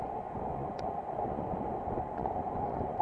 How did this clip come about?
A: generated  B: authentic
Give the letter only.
A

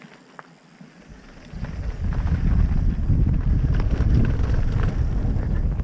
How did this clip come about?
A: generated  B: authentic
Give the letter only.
B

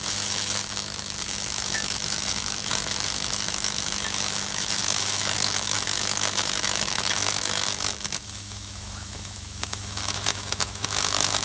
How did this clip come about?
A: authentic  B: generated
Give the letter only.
B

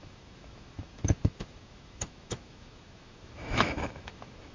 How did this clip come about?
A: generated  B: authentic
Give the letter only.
A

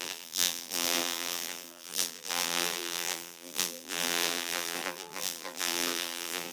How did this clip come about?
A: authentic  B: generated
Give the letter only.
B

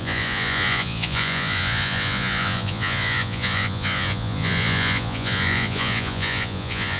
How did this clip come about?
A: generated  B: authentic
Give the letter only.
A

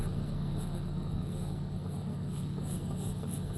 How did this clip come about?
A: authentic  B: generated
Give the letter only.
B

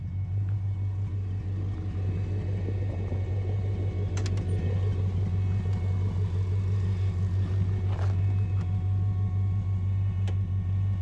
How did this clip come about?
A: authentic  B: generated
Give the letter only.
A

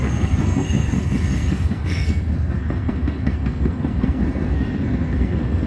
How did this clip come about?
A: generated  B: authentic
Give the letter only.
A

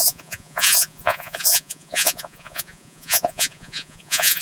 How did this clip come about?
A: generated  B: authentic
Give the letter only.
A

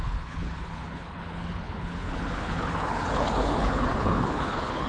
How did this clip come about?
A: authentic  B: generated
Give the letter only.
B